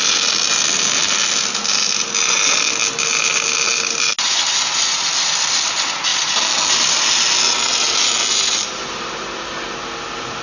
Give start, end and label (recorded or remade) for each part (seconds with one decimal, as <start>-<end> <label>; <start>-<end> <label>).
0.0-10.4 recorded